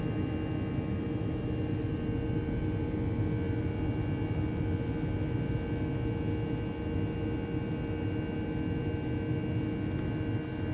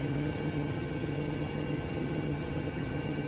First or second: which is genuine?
first